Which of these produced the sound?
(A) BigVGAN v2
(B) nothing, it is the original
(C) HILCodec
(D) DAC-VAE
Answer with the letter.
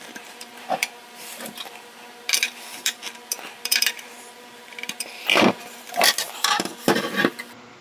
A